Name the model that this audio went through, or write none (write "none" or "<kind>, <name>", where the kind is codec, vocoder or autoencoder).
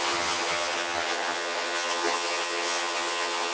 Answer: vocoder, HiFi-GAN